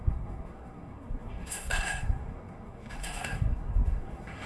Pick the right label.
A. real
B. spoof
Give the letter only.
B